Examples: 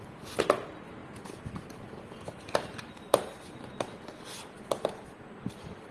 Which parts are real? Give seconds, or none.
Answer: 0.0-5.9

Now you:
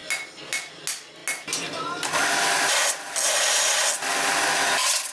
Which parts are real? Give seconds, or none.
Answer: 0.0-5.1

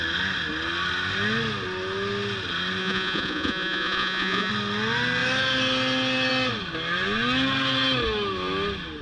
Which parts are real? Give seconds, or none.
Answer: 0.0-2.8; 4.5-9.0